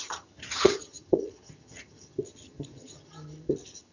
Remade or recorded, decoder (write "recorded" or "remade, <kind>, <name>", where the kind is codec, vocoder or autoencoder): remade, vocoder, HiFi-GAN